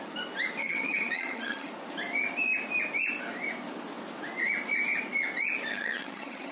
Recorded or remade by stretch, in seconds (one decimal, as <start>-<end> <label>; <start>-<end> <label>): 0.0-0.6 recorded; 0.6-1.7 remade; 1.7-5.7 recorded; 5.7-6.5 remade